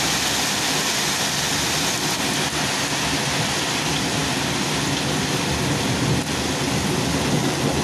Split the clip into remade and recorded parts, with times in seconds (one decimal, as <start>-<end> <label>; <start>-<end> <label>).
0.0-7.8 recorded